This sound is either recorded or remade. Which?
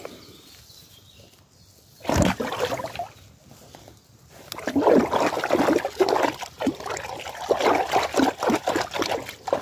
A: recorded